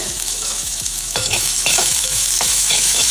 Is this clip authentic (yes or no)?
no